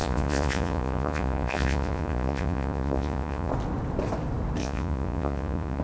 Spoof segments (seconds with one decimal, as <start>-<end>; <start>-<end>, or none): 0.0-3.5; 4.6-5.8